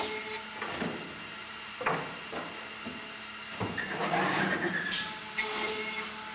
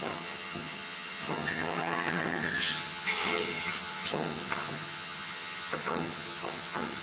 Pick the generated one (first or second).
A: second